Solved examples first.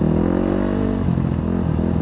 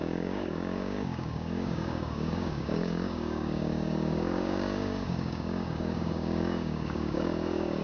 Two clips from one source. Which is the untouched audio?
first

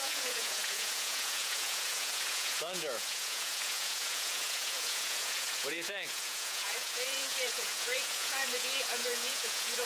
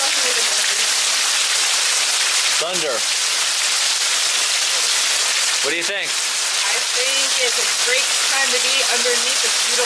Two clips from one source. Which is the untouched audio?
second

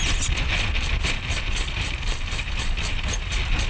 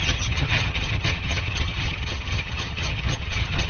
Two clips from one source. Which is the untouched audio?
first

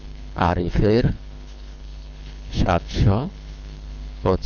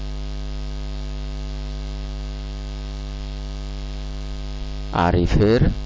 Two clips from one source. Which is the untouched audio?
second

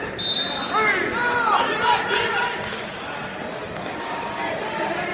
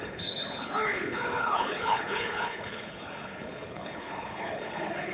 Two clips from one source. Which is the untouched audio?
first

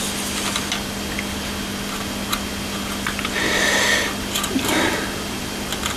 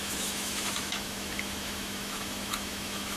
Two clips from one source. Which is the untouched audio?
first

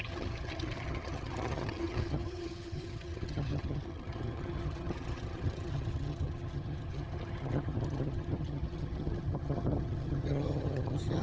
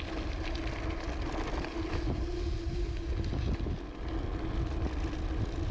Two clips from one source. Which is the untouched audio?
second